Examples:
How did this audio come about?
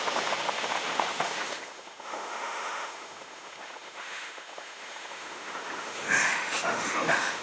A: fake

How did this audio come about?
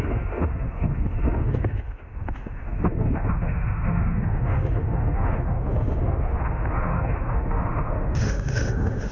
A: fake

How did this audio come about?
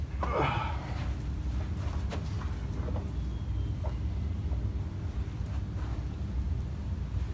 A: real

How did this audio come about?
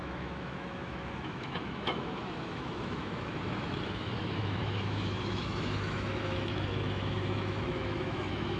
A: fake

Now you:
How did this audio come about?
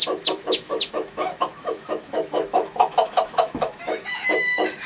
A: fake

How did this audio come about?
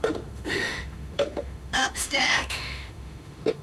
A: fake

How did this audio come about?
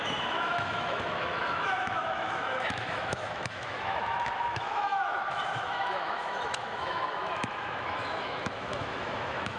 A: fake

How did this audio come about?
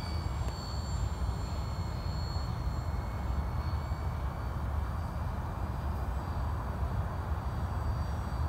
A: real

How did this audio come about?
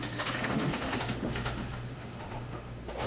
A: fake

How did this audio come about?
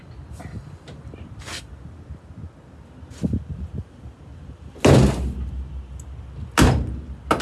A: real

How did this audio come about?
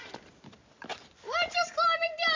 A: real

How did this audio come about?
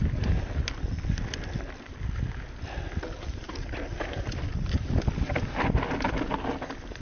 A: real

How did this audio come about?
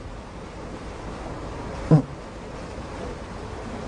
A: real